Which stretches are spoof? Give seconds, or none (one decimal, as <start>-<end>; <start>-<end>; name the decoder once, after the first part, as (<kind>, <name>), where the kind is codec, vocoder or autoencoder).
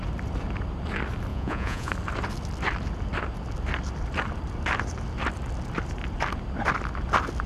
1.3-1.9 (vocoder, Vocos)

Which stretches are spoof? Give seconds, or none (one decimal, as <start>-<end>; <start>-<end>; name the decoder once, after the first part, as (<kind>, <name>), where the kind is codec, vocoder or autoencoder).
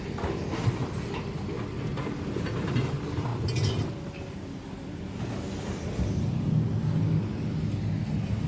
none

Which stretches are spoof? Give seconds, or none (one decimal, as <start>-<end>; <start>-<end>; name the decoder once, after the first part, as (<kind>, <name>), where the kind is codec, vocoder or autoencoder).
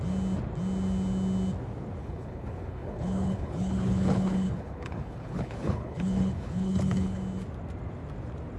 2.0-7.2 (codec, HILCodec)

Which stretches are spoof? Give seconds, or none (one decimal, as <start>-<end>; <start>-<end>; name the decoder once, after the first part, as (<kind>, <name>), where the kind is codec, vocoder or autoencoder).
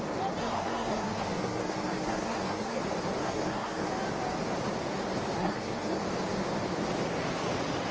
0.4-2.8 (codec, SNAC); 3.2-3.9; 5.4-6.0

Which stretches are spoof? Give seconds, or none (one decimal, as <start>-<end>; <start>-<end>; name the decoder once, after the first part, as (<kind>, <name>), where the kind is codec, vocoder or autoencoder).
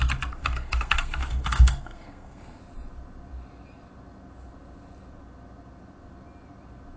0.4-2.6 (codec, SNAC)